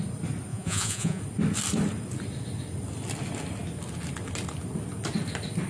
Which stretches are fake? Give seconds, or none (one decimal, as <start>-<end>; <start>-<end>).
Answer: 0.5-1.2